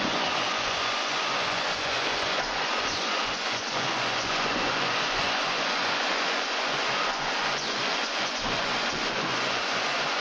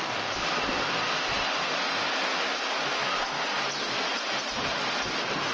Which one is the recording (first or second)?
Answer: second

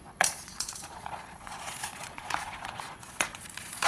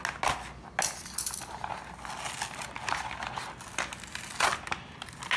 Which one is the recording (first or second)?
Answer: second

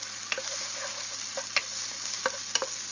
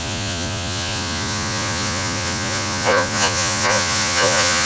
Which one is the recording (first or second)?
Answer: first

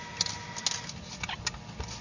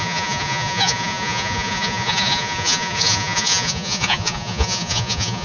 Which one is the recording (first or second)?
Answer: first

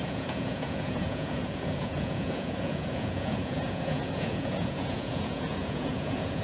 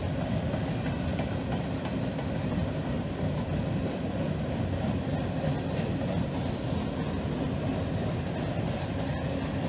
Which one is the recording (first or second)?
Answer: second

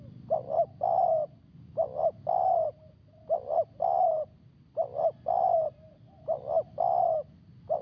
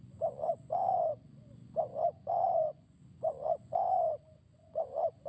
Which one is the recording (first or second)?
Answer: first